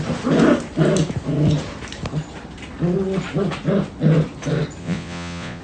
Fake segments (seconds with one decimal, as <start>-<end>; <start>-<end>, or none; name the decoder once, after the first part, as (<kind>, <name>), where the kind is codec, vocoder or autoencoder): 4.8-5.6 (vocoder, Vocos)